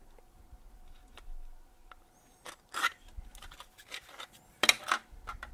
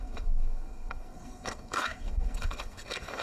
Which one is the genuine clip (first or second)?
first